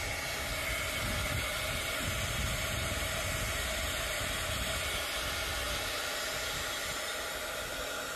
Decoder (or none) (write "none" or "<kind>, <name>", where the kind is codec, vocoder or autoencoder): none